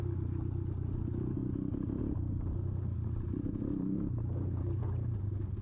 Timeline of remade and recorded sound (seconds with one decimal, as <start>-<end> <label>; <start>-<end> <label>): 0.0-5.6 recorded

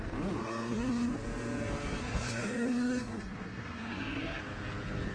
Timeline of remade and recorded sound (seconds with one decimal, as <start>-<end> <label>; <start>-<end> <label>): 0.0-0.4 recorded; 0.4-1.1 remade; 1.1-2.0 recorded; 2.0-4.4 remade; 4.4-5.1 recorded